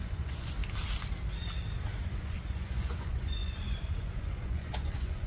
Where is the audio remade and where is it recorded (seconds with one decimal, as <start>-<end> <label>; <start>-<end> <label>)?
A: 0.0-0.6 remade; 0.6-2.2 recorded; 2.2-5.3 remade

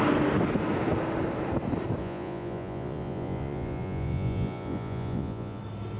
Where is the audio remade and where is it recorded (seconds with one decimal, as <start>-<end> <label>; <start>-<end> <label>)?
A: 0.0-2.0 recorded; 2.0-5.6 remade; 5.6-6.0 recorded